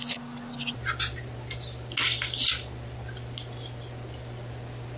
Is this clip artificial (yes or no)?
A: no